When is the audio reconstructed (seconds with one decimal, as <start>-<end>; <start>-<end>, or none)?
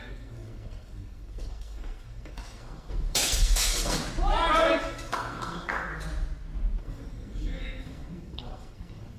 0.0-4.0; 4.8-5.9; 6.8-9.2